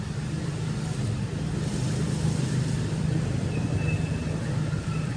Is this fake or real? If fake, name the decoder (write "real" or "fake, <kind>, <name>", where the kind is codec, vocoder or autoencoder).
fake, vocoder, BigVGAN v2